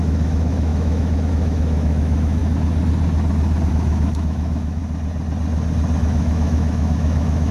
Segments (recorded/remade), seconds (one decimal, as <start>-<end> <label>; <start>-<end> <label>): 0.0-2.4 remade; 2.4-3.7 recorded; 3.7-4.8 remade; 4.8-6.0 recorded; 6.0-7.5 remade